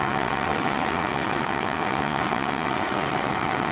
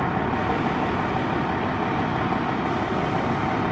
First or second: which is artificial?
first